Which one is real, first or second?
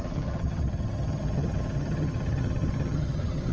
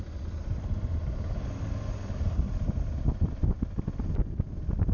second